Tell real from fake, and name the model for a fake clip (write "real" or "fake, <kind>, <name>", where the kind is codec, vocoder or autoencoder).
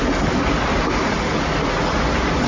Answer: real